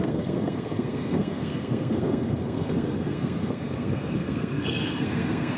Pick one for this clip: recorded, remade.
remade